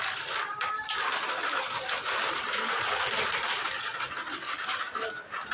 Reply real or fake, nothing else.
fake